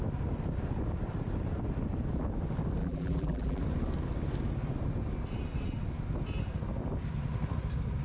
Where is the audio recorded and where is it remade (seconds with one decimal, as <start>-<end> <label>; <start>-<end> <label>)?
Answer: 0.0-2.8 recorded; 2.8-3.6 remade; 3.6-8.0 recorded